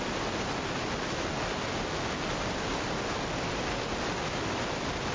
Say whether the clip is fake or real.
real